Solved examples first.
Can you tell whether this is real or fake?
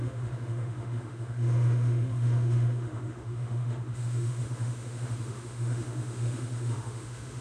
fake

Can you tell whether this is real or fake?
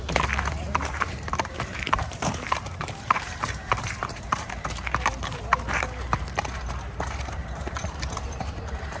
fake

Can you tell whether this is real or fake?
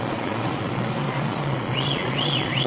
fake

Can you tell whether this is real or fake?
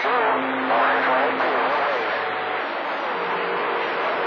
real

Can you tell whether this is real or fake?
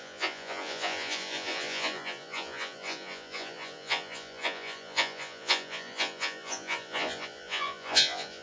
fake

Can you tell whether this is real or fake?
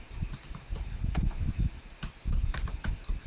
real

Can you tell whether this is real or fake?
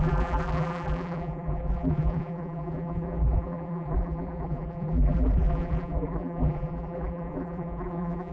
fake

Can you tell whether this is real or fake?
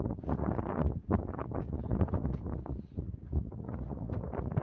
fake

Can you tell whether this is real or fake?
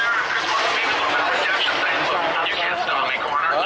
real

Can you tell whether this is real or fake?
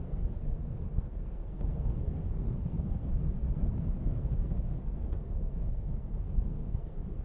fake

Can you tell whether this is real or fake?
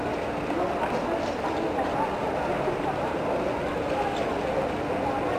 real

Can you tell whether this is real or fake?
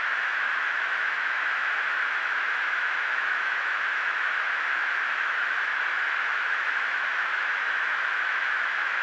fake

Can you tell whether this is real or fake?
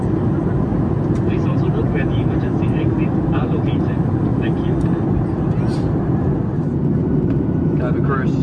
real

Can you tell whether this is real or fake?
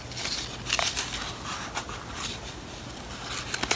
real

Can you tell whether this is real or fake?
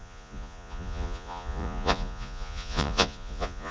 fake